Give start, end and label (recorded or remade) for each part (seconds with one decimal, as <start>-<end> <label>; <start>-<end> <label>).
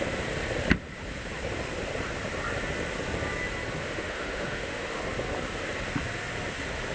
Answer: 0.0-3.8 recorded; 3.8-5.0 remade; 5.0-6.9 recorded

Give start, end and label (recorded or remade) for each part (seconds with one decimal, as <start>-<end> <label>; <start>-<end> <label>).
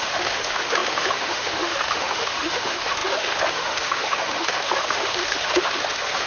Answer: 0.0-6.3 remade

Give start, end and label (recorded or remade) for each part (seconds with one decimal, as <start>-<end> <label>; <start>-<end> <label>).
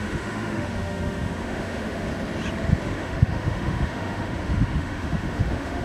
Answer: 0.0-2.1 remade; 2.1-2.8 recorded; 2.8-5.8 remade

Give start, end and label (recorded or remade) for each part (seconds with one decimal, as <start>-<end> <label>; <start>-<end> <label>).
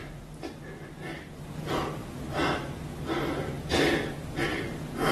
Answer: 0.0-5.1 recorded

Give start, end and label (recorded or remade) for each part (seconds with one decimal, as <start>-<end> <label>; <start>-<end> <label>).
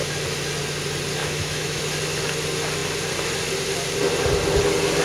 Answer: 0.0-1.2 recorded; 1.2-1.8 remade; 1.8-5.0 recorded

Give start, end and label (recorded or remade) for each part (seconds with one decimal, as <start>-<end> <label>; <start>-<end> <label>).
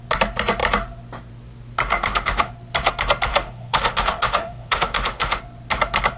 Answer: 0.0-1.9 recorded; 1.9-2.5 remade; 2.5-3.3 recorded; 3.3-5.4 remade; 5.4-6.2 recorded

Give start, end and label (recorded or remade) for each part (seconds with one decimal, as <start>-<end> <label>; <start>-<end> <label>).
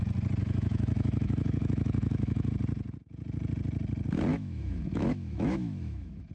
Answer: 0.0-0.4 recorded; 0.4-2.5 remade; 2.5-4.3 recorded; 4.3-6.3 remade